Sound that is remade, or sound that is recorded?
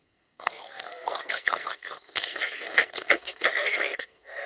remade